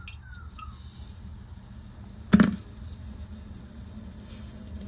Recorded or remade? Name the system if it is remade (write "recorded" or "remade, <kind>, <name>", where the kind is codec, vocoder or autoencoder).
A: recorded